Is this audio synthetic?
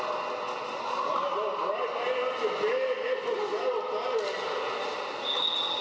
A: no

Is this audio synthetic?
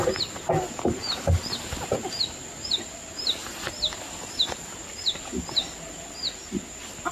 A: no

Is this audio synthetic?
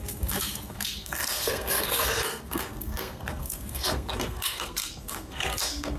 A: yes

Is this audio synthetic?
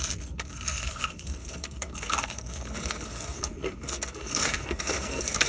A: yes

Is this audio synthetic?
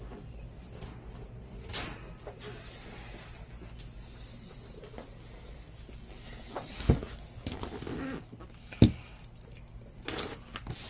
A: no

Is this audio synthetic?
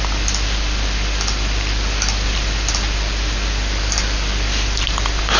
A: no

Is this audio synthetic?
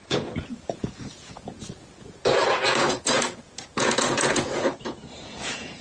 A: yes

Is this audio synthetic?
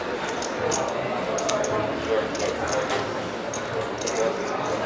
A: no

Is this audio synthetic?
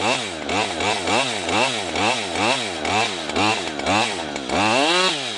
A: no